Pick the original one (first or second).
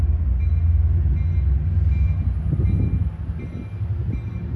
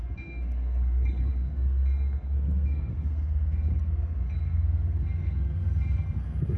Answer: first